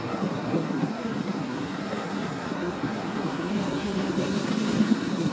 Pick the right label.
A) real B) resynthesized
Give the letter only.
B